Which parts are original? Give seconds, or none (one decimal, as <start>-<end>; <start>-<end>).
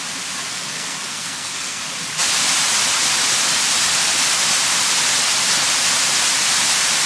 0.0-0.5; 1.8-7.1